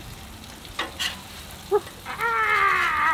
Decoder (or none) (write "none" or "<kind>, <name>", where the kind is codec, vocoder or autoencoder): none